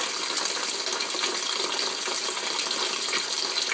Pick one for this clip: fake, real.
real